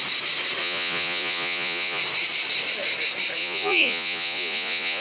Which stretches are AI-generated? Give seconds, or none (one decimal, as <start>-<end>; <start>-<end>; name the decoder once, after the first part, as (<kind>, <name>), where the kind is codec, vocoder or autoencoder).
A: 0.6-2.0 (vocoder, Vocos); 3.4-5.0